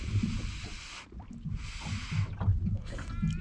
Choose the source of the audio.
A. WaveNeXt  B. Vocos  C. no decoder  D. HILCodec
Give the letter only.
C